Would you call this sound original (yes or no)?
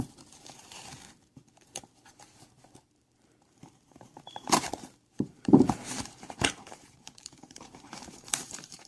no